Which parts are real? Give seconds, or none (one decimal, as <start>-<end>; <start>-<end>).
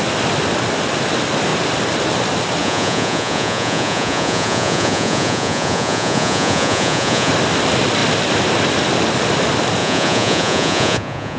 0.0-2.6; 7.3-9.8